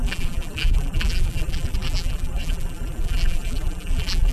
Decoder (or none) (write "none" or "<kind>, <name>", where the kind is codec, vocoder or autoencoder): vocoder, BigVGAN v2